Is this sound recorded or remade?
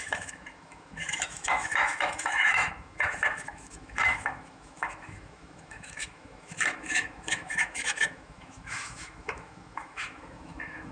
remade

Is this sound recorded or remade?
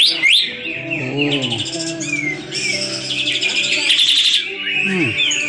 recorded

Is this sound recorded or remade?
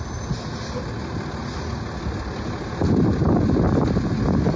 recorded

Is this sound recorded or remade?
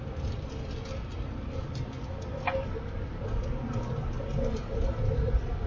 recorded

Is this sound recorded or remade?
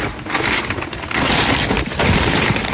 recorded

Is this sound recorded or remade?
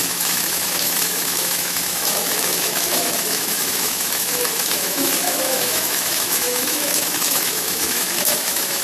remade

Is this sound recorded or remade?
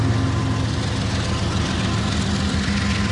recorded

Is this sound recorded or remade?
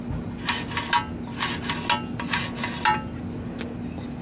recorded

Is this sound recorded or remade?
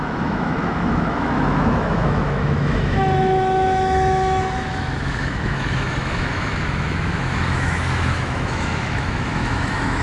remade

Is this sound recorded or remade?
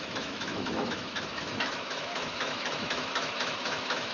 remade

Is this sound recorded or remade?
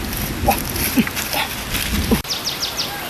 recorded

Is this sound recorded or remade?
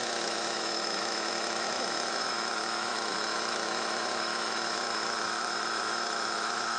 remade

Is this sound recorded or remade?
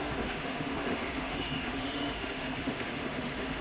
remade